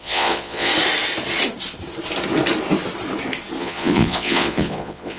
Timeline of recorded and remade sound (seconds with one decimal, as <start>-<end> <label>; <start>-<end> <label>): 0.0-0.7 remade; 0.7-3.6 recorded; 3.6-5.2 remade